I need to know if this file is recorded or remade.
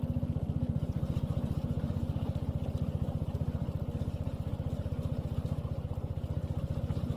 recorded